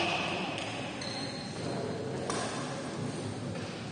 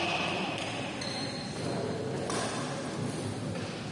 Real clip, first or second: first